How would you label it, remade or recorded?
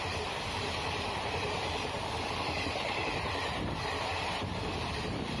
remade